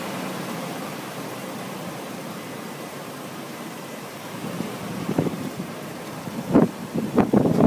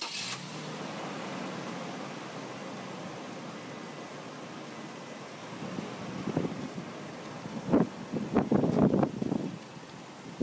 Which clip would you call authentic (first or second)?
second